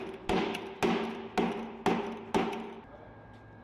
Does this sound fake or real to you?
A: real